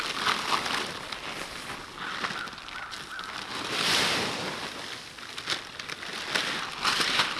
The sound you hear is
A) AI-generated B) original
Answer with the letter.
B